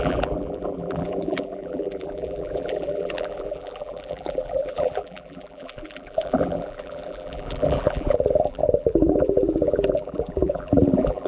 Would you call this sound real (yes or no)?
no